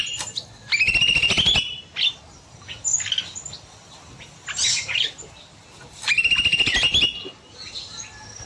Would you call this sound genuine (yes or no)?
yes